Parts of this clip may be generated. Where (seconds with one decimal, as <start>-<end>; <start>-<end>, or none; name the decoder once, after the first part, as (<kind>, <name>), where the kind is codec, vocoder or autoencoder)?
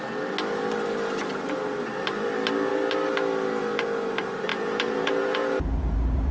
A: 4.5-6.3 (vocoder, Vocos)